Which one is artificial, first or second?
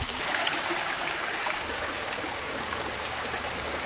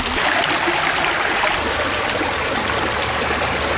first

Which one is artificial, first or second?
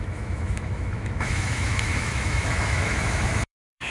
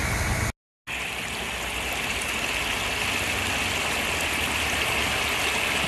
first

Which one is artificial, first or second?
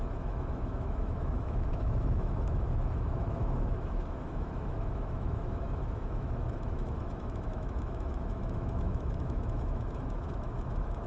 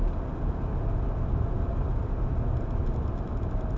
first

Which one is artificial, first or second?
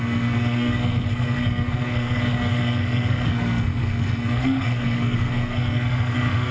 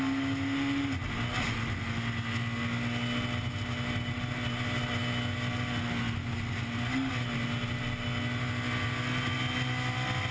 first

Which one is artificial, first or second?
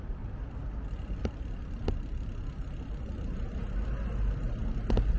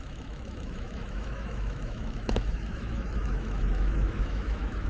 second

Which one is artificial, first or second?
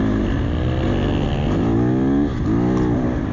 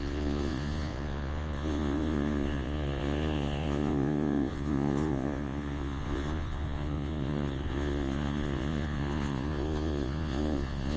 second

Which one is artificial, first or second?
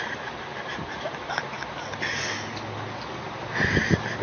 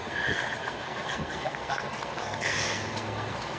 second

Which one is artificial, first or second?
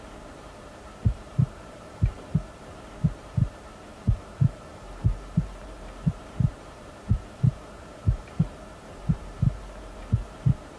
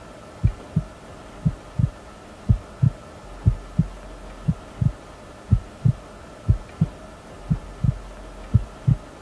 first